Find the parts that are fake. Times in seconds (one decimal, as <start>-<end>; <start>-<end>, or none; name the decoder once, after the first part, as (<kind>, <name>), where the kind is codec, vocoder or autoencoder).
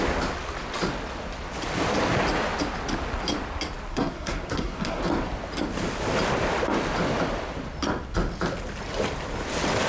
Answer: 3.9-5.0 (codec, SNAC)